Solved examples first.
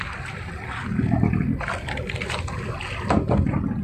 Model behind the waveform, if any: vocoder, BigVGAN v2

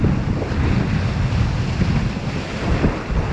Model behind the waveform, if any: none